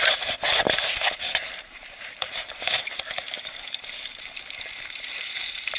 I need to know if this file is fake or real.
fake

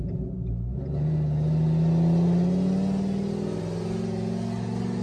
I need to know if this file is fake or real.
real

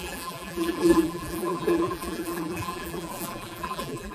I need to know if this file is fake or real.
fake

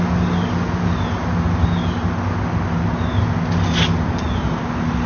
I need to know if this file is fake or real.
real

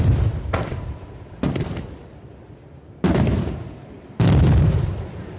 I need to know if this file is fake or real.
fake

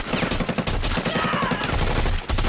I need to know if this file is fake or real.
real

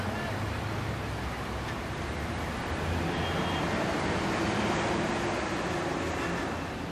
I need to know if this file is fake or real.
real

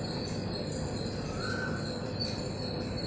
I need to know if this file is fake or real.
fake